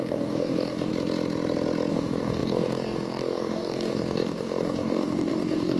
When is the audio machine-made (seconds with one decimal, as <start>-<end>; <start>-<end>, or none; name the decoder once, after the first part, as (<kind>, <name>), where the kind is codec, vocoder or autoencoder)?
0.0-0.9 (codec, DAC); 1.9-5.8